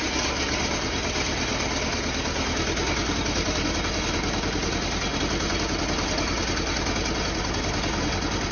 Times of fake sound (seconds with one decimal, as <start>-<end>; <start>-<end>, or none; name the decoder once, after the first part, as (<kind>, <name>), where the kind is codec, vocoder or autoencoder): none